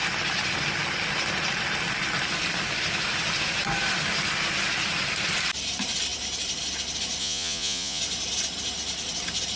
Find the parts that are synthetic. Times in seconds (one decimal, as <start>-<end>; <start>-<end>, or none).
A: 7.2-8.0